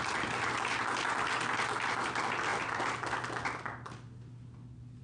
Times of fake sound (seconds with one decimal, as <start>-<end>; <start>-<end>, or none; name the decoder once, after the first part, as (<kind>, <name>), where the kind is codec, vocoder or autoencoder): none